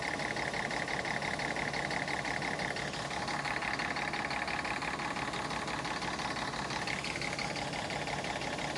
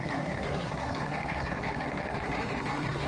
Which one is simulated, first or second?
second